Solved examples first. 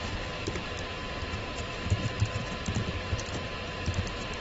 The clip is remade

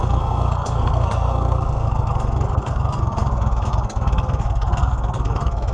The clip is remade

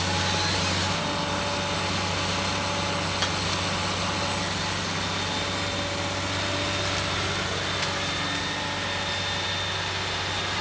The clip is recorded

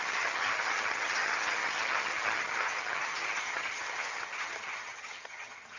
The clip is remade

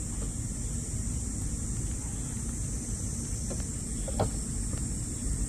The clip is recorded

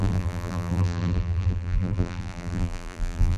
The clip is remade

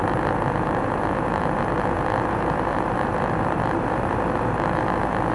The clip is remade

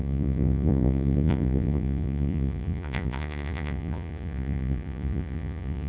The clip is remade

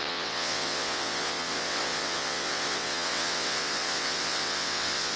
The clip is remade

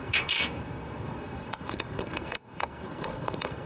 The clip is remade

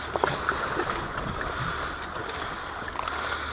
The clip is recorded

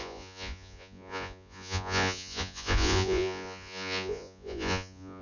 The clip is remade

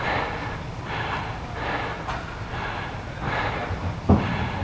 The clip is recorded